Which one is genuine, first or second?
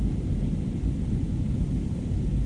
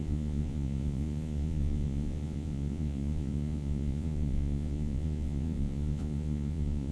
first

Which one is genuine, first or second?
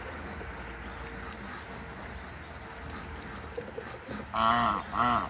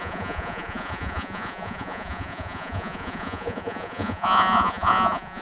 first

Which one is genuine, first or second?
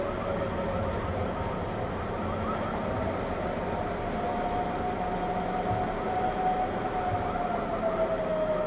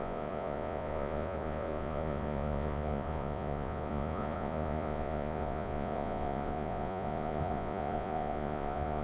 first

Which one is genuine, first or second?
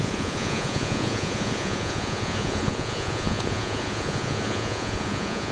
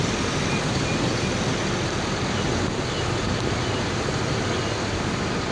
second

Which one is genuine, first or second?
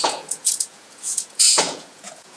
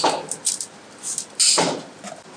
second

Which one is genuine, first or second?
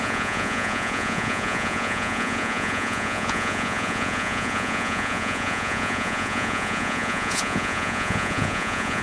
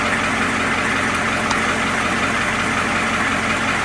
second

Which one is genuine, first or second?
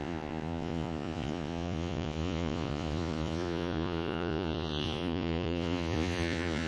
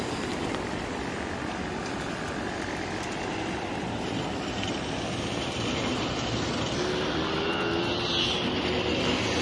second